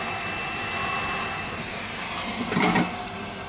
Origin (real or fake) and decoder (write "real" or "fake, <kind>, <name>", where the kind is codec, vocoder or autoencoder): real